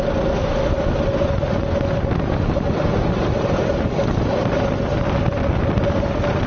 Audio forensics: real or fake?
real